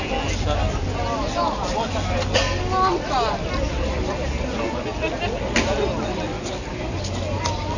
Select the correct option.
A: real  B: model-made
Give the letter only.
A